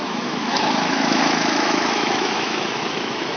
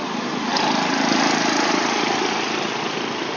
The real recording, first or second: second